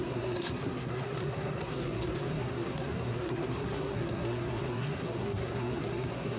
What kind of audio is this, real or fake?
fake